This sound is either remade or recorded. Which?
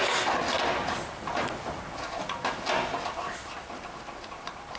recorded